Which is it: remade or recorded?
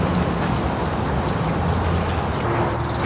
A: recorded